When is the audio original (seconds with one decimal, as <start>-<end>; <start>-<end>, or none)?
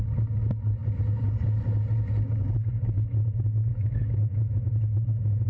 0.0-3.7; 4.7-5.5